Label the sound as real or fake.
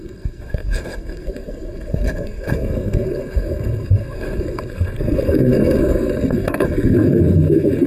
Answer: fake